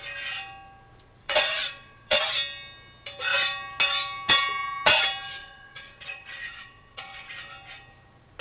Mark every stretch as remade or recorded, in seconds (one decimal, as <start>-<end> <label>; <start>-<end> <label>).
0.0-1.2 recorded; 1.2-2.2 remade; 2.2-5.4 recorded; 5.4-7.3 remade; 7.3-8.4 recorded